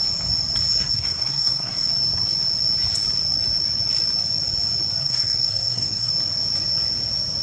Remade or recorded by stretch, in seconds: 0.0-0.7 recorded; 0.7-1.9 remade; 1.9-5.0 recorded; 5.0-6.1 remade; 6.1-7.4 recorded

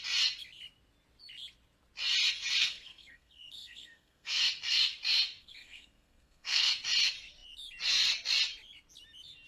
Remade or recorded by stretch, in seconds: 0.0-2.6 recorded; 2.6-4.4 remade; 4.4-5.4 recorded; 5.4-6.7 remade; 6.7-9.5 recorded

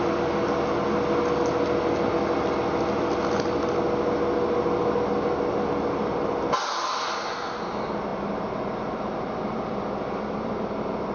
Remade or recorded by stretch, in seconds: 0.0-11.1 recorded

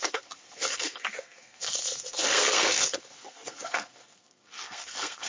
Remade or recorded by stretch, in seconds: 0.0-5.3 remade

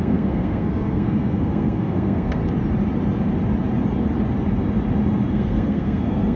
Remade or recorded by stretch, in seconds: 0.0-2.4 remade; 2.4-5.3 recorded; 5.3-6.4 remade

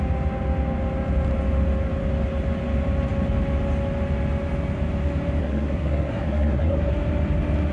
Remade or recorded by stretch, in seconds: 0.0-5.4 recorded; 5.4-6.9 remade; 6.9-7.7 recorded

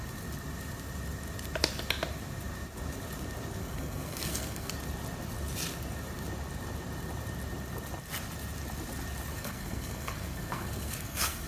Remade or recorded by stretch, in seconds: 0.0-3.6 recorded; 3.6-4.7 remade; 4.7-9.3 recorded; 9.3-11.5 remade